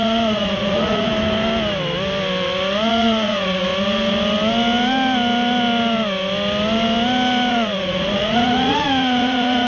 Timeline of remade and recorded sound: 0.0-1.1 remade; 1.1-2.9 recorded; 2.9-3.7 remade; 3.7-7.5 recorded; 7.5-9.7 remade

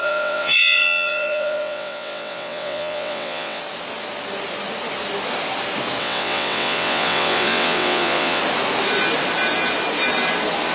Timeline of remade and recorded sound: 0.0-3.6 remade; 3.6-6.0 recorded; 6.0-8.4 remade; 8.4-10.7 recorded

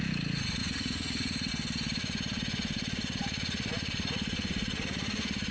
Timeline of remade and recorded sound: 0.0-0.6 recorded; 0.6-1.5 remade; 1.5-2.0 recorded; 2.0-5.5 remade

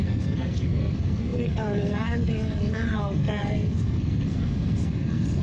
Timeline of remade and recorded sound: 0.0-5.4 remade

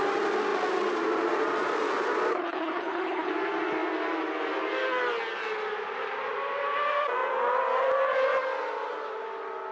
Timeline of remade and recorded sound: 0.0-2.3 recorded; 2.3-3.3 remade; 3.3-9.7 recorded